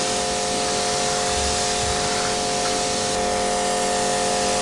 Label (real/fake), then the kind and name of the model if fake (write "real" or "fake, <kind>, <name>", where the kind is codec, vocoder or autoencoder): real